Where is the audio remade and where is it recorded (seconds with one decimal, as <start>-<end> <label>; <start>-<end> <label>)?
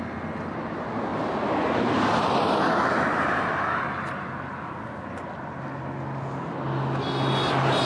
0.0-7.9 recorded